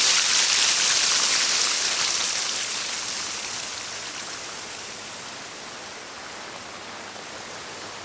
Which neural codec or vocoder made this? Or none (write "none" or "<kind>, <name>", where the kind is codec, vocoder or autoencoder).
none